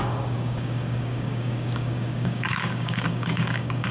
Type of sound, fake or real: fake